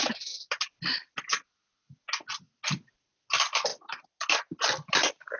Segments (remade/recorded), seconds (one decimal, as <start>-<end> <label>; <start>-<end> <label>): 0.0-5.4 recorded